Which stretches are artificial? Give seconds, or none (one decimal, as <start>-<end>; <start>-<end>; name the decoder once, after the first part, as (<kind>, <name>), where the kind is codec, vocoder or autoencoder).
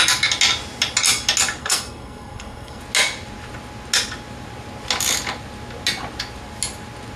1.6-2.8 (codec, SNAC)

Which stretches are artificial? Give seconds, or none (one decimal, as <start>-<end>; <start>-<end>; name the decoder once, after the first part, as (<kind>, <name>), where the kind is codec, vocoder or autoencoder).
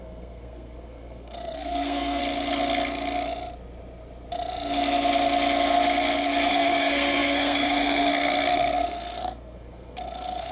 0.0-2.2 (codec, SNAC); 6.5-10.5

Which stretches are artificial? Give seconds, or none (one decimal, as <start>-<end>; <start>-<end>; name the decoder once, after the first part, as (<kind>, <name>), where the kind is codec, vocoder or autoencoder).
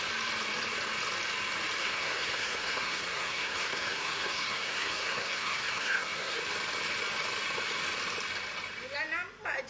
1.8-6.4 (codec, SNAC)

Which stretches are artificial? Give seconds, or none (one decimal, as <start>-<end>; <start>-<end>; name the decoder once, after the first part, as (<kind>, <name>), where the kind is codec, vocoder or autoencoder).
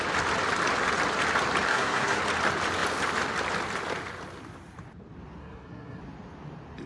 1.7-2.2 (codec, SNAC); 5.4-6.0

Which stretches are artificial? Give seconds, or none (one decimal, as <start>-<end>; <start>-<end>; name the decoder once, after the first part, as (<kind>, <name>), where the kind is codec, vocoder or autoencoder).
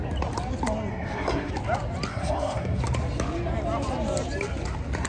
0.9-1.5 (codec, SNAC); 2.1-2.8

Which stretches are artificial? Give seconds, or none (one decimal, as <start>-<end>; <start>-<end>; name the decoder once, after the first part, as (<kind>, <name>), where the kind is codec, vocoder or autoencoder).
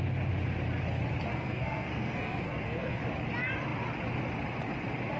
1.3-3.0 (codec, SNAC)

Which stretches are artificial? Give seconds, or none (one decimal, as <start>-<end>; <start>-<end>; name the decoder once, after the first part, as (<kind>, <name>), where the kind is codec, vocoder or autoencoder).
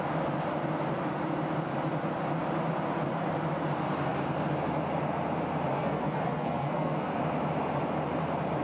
5.7-7.2 (codec, SNAC)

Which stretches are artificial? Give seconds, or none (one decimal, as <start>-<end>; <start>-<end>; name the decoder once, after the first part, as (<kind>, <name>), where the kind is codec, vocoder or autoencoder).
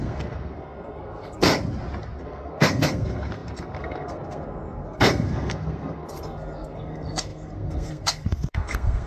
0.0-1.5 (codec, SNAC); 2.2-9.1